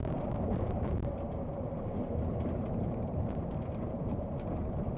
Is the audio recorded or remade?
remade